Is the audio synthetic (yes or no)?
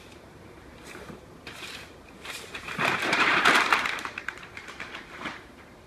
yes